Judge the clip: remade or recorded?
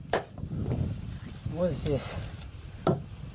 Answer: recorded